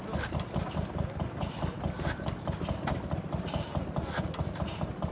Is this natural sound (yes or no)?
yes